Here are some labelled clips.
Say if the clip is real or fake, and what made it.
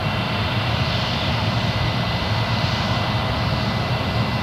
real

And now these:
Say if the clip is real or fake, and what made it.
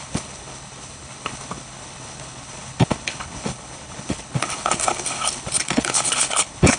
fake, codec, HILCodec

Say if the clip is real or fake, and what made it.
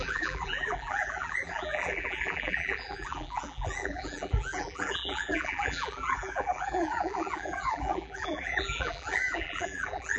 fake, vocoder, BigVGAN v2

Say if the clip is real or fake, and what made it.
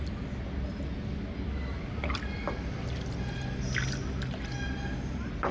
real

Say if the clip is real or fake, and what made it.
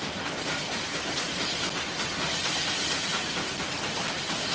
real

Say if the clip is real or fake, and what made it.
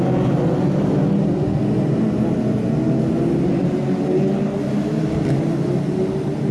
real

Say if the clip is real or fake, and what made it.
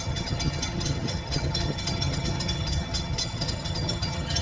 fake, vocoder, HiFi-GAN